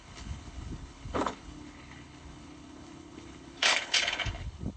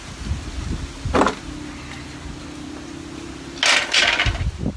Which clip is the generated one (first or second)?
first